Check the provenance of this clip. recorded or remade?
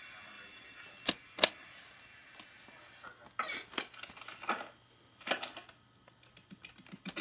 recorded